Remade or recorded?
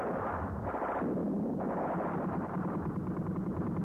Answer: recorded